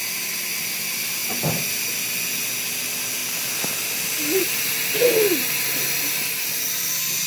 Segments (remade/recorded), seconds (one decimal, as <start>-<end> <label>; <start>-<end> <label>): 0.0-7.3 recorded